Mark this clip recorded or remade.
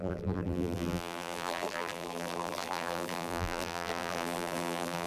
remade